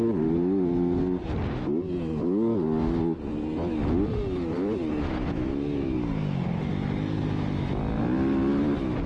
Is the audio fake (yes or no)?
no